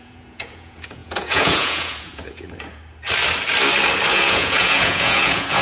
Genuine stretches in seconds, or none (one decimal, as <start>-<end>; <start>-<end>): 2.8-4.1

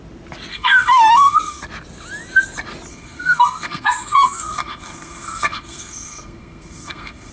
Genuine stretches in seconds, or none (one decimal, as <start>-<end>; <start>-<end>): 0.0-0.5; 1.6-2.9

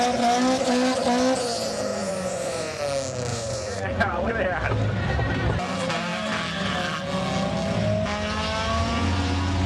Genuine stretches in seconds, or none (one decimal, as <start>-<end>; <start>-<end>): 0.0-1.9; 2.8-3.3; 4.3-9.7

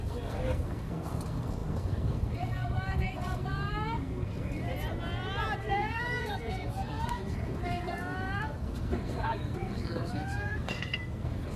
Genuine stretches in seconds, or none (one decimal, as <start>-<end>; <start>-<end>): 4.6-5.6